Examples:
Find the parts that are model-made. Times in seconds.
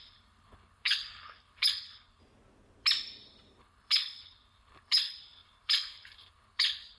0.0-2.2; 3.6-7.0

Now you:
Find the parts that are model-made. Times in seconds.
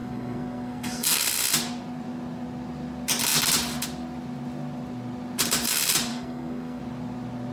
0.0-1.2; 6.1-6.8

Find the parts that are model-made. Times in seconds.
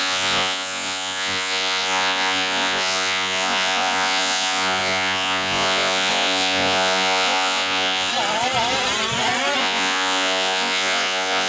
0.0-8.1; 9.6-11.5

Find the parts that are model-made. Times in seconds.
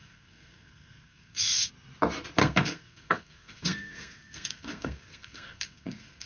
0.0-1.7; 2.4-6.3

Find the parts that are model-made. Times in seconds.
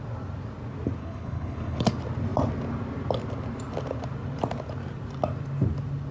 1.0-1.9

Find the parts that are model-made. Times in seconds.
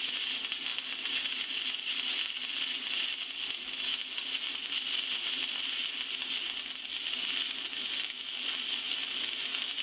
4.0-8.9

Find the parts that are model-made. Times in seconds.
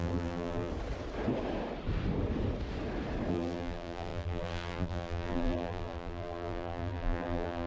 0.0-0.7; 3.3-7.7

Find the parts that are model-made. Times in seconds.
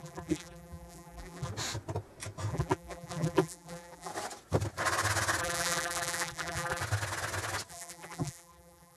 0.0-1.5; 2.5-4.1; 5.4-6.8; 7.7-9.0